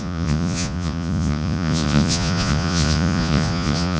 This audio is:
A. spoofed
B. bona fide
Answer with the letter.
A